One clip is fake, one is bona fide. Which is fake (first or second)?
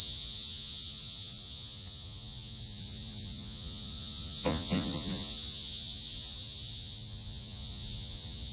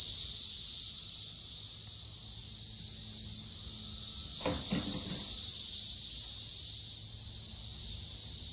first